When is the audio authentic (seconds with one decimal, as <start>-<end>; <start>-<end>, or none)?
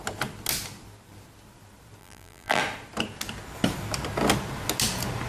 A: 0.0-2.0; 2.6-5.3